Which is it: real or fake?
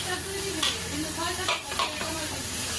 fake